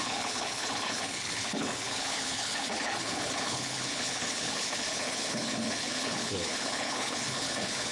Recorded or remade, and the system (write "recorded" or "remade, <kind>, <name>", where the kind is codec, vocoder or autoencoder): remade, codec, HILCodec